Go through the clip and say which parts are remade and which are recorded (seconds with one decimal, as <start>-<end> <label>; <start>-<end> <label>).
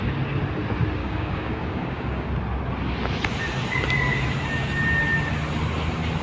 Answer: 0.0-1.0 recorded; 1.0-2.3 remade; 2.3-6.2 recorded